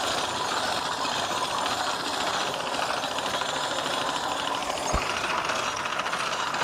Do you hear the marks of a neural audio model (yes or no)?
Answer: no